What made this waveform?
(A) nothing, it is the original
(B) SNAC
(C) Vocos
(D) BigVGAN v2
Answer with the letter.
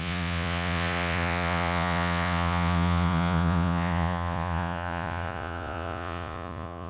C